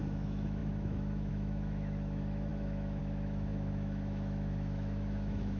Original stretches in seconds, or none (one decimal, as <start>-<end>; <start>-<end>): none